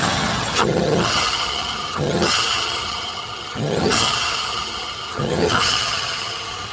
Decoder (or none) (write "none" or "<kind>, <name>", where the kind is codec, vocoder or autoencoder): vocoder, HiFi-GAN